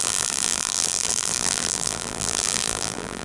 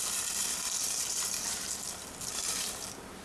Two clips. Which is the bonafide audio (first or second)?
second